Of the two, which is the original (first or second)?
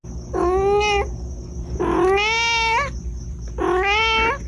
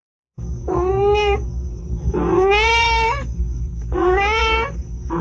first